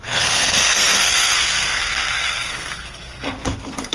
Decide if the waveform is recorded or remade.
remade